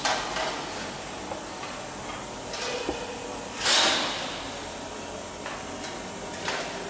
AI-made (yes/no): no